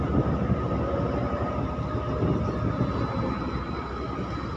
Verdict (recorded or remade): recorded